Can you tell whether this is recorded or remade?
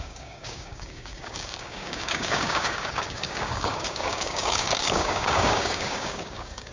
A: remade